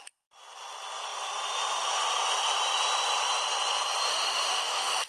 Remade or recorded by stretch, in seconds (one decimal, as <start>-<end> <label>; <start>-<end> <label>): 0.0-4.1 recorded; 4.1-5.1 remade